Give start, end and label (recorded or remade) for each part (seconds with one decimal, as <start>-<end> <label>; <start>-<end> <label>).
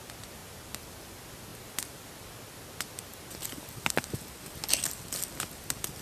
0.0-6.0 recorded